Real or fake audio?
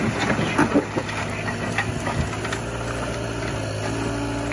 real